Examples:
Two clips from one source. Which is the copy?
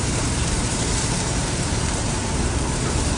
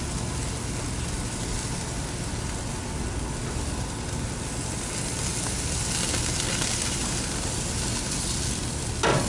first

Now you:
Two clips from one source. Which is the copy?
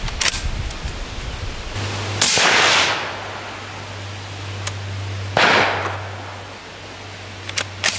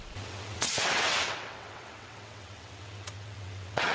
second